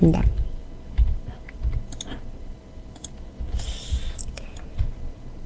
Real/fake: real